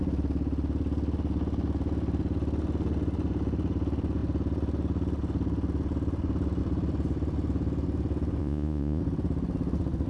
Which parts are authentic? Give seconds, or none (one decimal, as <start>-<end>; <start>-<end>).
0.0-8.4; 9.0-10.1